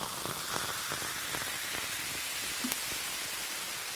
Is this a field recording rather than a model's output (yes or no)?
yes